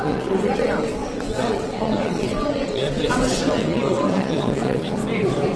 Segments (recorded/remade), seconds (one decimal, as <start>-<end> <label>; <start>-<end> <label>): 0.0-5.0 remade; 5.0-5.6 recorded